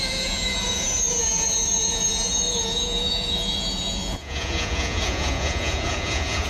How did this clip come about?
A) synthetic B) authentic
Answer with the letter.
A